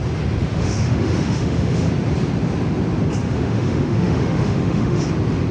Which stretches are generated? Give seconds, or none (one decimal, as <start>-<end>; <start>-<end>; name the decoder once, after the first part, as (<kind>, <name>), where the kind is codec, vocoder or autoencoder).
0.4-1.9 (autoencoder, DAC-VAE); 3.2-5.0